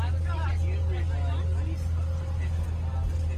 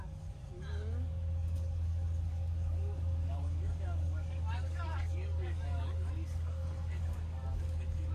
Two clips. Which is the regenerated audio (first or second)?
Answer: second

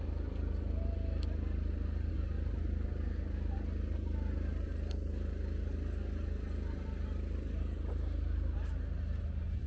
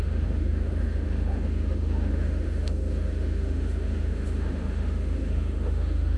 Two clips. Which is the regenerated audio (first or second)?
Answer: second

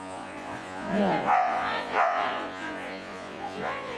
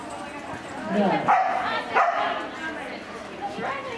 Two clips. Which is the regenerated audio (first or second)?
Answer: first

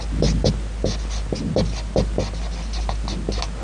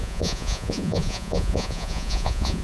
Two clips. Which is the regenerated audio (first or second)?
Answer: second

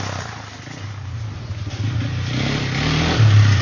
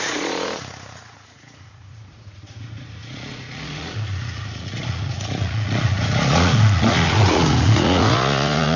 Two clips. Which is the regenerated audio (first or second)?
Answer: second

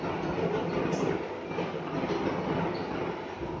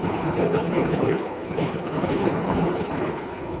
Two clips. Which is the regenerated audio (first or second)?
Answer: second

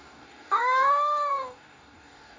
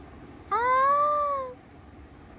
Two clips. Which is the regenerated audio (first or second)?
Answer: first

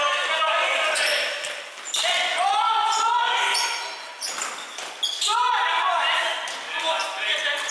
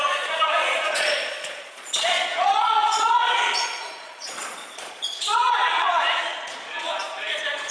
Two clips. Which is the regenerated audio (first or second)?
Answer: second